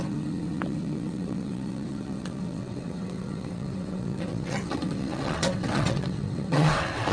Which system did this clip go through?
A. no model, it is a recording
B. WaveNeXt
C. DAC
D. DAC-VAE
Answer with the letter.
B